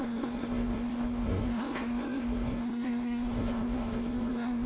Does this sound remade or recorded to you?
remade